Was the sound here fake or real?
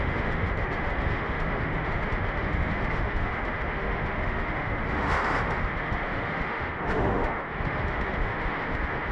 fake